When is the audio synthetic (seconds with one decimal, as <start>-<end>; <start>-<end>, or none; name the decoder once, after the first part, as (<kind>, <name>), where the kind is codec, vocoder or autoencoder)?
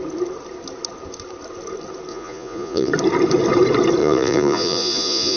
2.1-2.9 (vocoder, Vocos); 4.0-5.4